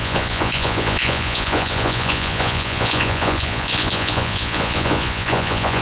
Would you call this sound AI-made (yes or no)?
yes